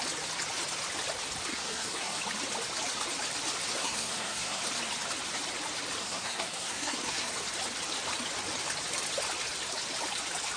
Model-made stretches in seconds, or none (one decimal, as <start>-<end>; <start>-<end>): 1.5-2.2; 3.8-4.6; 6.0-7.3